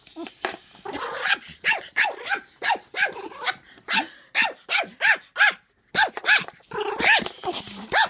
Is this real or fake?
real